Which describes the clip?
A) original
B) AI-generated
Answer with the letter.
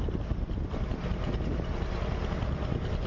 A